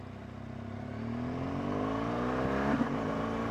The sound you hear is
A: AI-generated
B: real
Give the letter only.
B